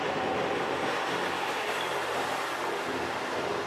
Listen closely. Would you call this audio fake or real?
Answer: real